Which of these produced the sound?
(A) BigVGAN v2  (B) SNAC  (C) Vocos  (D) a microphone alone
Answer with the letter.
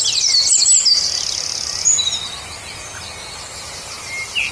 D